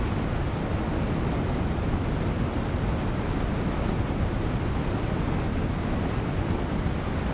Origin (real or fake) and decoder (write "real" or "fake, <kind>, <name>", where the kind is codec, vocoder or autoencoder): real